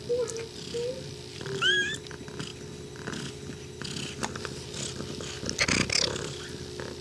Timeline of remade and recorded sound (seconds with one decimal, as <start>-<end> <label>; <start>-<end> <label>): 0.0-7.0 recorded